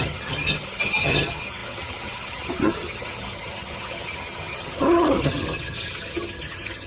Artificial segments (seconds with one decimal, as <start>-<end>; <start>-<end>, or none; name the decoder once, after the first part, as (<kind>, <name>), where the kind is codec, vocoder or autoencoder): 0.0-6.9 (vocoder, HiFi-GAN)

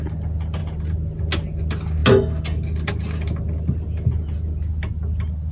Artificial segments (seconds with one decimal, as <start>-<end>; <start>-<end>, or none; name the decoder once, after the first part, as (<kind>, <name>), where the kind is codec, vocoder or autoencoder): none

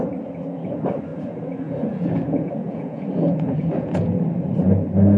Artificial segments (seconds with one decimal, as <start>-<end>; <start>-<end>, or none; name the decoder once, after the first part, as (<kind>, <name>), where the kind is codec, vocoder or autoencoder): 1.1-4.2 (vocoder, Vocos)